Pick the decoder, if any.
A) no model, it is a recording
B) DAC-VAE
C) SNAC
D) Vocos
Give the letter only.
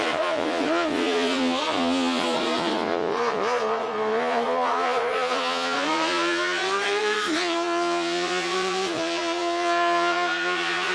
D